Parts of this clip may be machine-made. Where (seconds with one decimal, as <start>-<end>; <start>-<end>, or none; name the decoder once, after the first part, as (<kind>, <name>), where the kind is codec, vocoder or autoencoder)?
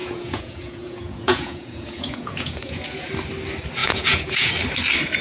0.0-3.1 (vocoder, Vocos); 3.8-4.5